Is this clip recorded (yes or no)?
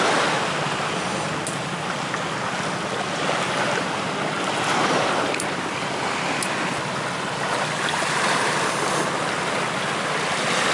yes